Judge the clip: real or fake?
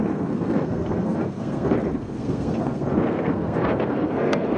fake